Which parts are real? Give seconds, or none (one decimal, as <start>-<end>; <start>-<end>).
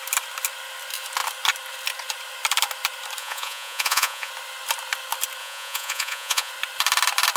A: 0.0-3.2; 4.3-5.4; 6.5-7.4